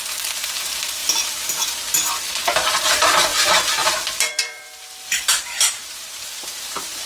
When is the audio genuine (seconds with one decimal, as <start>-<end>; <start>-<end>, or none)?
1.0-2.9; 3.3-4.3